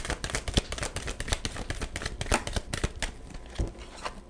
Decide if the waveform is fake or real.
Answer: real